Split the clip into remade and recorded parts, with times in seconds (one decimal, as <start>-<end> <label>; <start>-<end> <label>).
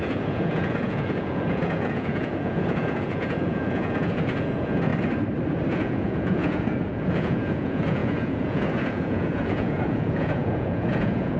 0.0-4.9 remade; 4.9-5.7 recorded; 5.7-11.4 remade